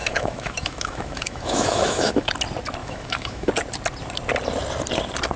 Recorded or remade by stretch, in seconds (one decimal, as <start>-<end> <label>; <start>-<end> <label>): 0.0-2.3 remade; 2.3-2.8 recorded; 2.8-3.5 remade; 3.5-5.4 recorded